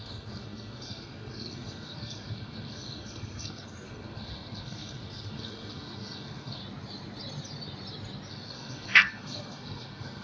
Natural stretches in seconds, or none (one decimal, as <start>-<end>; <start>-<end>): 6.6-8.3

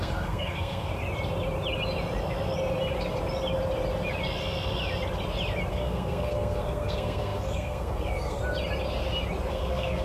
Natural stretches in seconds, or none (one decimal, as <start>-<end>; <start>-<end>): 0.9-5.7; 8.4-9.5

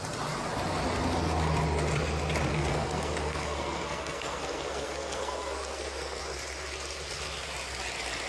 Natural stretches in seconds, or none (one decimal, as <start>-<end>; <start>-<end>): 0.0-2.5; 6.2-8.3

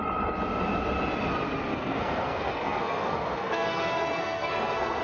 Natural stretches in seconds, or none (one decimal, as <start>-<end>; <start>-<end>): 0.0-1.7

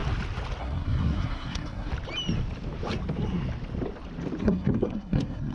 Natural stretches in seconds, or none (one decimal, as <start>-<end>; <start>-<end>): 0.0-0.6; 1.9-4.4

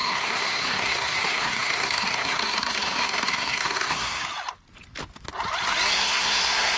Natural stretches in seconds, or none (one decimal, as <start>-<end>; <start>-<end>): 4.2-5.9

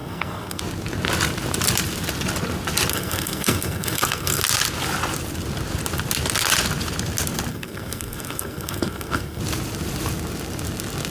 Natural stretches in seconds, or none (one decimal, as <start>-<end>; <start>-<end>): 0.6-2.9; 4.4-7.5; 9.4-11.1